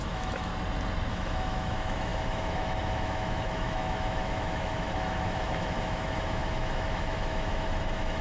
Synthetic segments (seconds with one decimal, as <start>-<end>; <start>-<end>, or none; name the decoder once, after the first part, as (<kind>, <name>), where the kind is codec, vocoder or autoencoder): 0.0-0.5 (autoencoder, DAC-VAE); 1.1-8.2